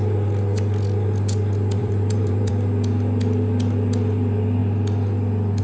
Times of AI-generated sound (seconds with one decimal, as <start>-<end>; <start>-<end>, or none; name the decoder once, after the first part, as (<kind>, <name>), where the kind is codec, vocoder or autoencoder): 1.8-2.5 (vocoder, BigVGAN v2)